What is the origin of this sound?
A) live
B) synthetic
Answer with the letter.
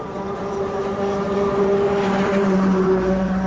B